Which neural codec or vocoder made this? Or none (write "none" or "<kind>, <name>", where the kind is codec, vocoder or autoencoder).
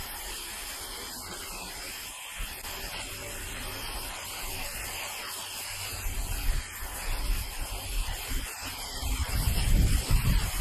none